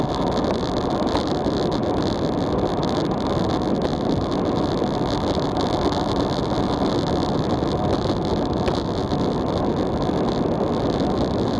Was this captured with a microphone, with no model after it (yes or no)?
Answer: yes